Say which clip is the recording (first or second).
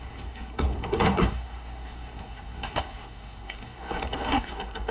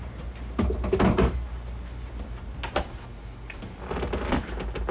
second